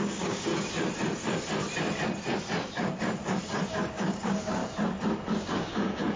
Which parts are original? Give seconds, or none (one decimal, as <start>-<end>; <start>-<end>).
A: 0.5-3.7; 4.6-5.4